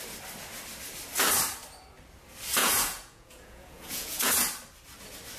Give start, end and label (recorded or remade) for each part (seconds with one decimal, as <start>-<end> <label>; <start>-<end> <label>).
0.0-2.6 recorded; 2.6-4.3 remade; 4.3-5.4 recorded